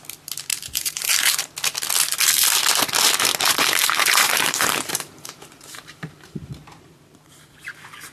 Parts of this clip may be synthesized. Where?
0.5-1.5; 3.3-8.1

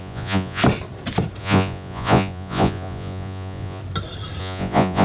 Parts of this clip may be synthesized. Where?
0.0-0.6; 1.4-3.8; 4.4-5.0

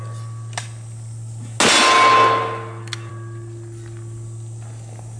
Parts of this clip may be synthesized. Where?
none

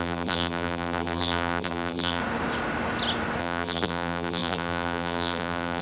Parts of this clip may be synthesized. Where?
0.0-2.2; 3.4-5.8

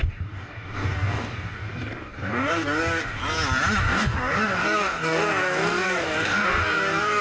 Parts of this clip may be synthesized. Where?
0.0-3.2; 3.8-7.2

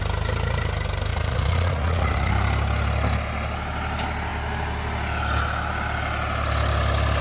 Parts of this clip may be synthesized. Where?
1.1-2.3

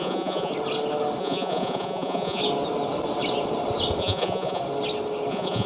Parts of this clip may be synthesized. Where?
0.0-0.5; 1.2-2.4; 4.0-4.6; 5.3-5.7